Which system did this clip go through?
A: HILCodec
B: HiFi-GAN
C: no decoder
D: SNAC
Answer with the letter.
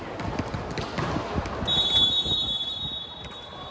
C